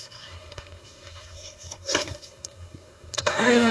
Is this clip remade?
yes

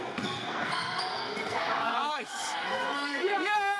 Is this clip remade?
yes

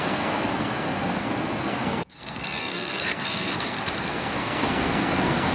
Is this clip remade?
yes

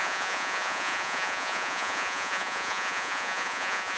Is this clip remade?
yes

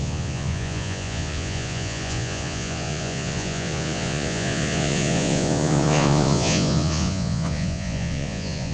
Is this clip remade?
yes